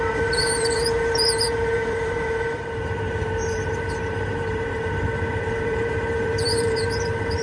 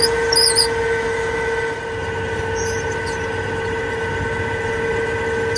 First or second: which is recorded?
second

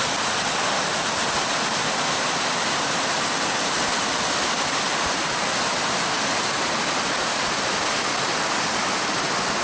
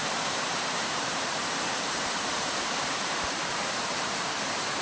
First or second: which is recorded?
first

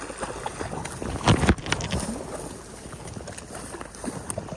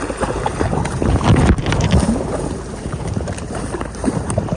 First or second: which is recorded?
first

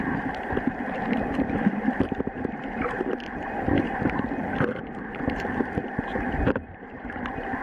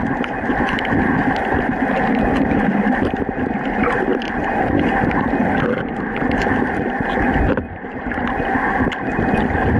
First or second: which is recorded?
second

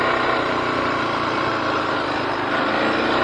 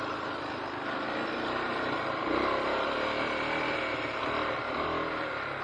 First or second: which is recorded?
first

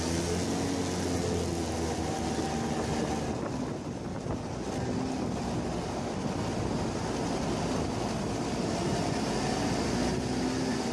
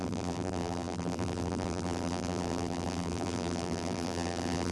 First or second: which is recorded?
first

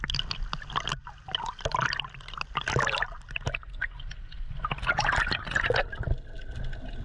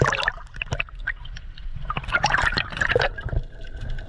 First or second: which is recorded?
first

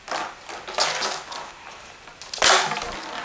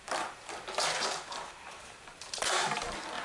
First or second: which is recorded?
first